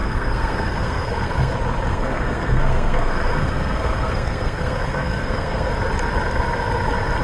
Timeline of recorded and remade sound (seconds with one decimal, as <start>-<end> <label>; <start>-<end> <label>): 0.0-1.5 remade; 1.5-1.9 recorded; 1.9-5.7 remade; 5.7-7.2 recorded